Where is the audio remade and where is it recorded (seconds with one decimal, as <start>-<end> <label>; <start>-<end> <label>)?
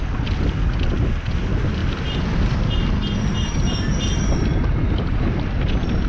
0.0-6.1 recorded